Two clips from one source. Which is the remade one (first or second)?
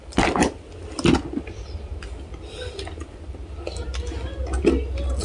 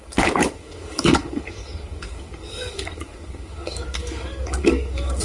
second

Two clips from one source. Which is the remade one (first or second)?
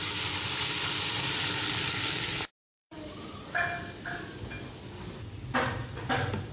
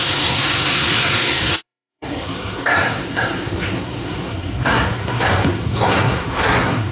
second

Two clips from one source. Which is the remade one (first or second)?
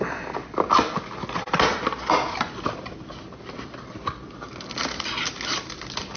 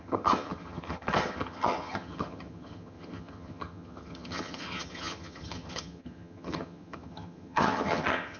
second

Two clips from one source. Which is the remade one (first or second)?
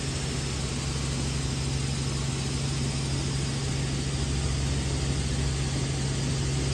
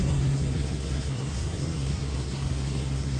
second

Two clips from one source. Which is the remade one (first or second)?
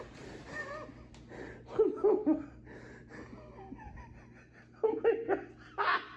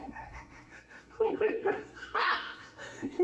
second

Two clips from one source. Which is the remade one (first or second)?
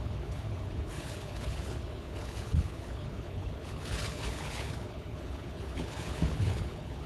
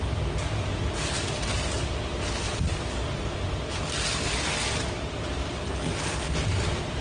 first